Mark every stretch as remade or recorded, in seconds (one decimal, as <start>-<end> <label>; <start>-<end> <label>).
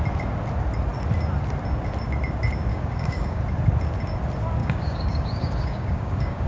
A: 0.0-2.7 recorded; 2.7-3.4 remade; 3.4-4.6 recorded; 4.6-6.5 remade